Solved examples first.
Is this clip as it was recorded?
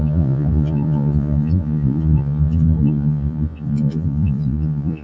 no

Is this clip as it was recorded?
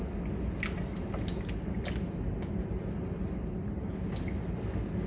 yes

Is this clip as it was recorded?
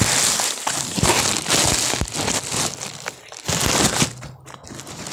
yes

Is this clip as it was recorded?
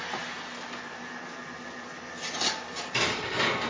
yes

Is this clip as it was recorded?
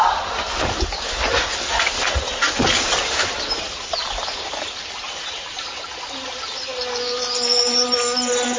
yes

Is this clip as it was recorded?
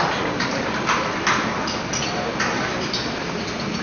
yes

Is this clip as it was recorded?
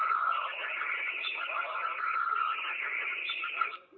no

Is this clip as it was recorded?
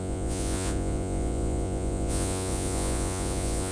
no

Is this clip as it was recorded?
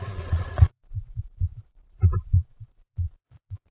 no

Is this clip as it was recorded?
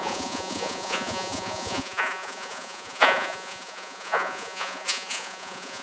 no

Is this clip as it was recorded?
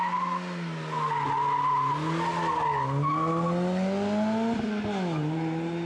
yes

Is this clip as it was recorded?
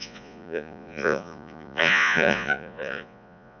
no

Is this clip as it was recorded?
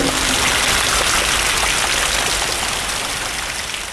yes